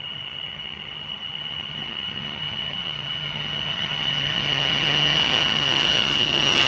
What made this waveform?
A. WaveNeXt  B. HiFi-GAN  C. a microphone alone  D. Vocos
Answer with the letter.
B